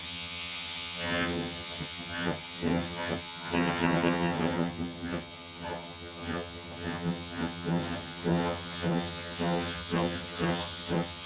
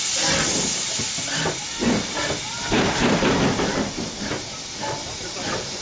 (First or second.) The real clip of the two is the second